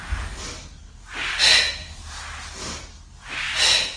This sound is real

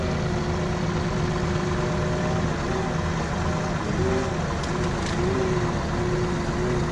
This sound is real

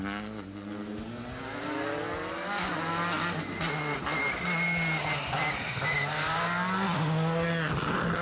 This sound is real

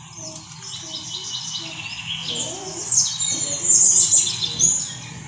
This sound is real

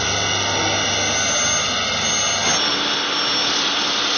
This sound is real